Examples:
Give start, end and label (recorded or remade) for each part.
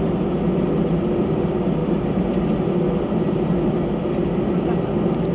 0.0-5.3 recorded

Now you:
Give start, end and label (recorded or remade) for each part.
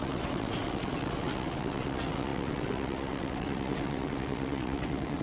0.0-5.2 remade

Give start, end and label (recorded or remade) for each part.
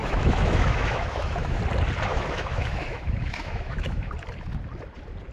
0.0-1.6 remade; 1.6-2.1 recorded; 2.1-4.1 remade; 4.1-5.3 recorded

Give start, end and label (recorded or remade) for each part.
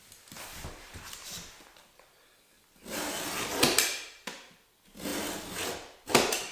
0.0-0.9 recorded; 0.9-2.2 remade; 2.2-6.5 recorded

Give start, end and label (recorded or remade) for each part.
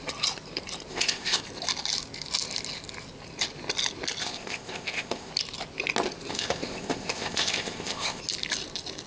0.0-0.9 recorded; 0.9-1.4 remade; 1.4-4.2 recorded; 4.2-5.3 remade; 5.3-6.3 recorded; 6.3-8.2 remade; 8.2-9.1 recorded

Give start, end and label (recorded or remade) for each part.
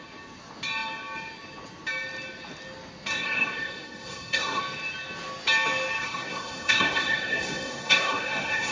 0.0-3.1 recorded; 3.1-4.6 remade; 4.6-6.0 recorded; 6.0-8.7 remade